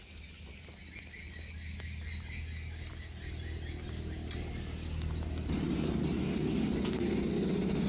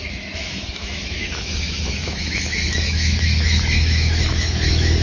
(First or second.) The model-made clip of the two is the second